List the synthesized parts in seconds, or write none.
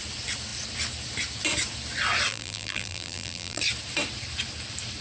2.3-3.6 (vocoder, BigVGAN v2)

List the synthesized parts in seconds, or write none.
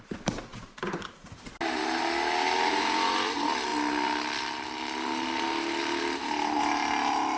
none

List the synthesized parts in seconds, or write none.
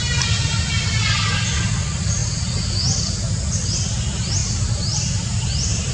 4.4-5.9 (vocoder, BigVGAN v2)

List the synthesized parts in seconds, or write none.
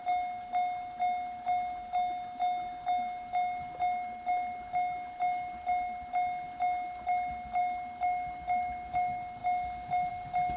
none